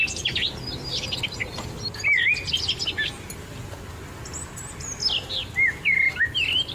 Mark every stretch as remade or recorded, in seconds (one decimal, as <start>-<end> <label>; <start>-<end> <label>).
0.0-6.7 recorded